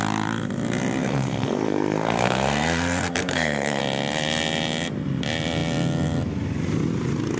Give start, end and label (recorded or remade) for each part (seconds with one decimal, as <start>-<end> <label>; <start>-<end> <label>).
0.0-1.0 recorded; 1.0-3.8 remade; 3.8-7.4 recorded